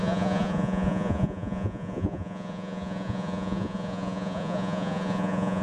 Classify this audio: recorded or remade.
remade